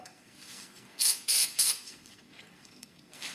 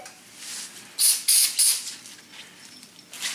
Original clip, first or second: second